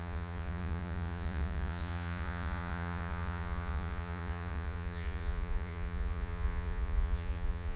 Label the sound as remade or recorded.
remade